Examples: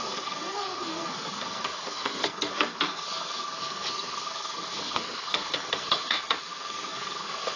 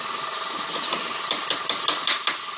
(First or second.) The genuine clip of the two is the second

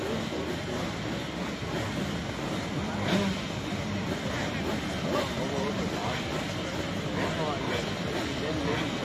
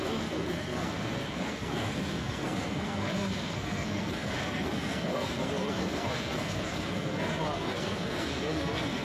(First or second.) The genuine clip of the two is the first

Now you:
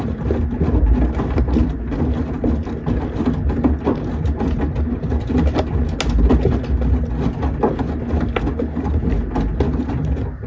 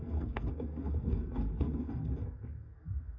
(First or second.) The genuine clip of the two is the first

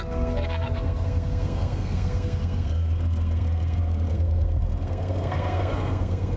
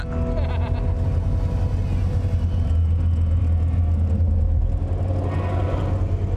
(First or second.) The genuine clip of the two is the second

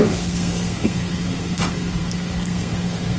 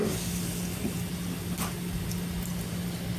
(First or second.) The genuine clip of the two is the second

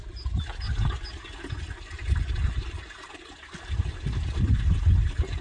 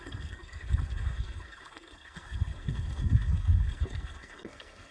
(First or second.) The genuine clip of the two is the first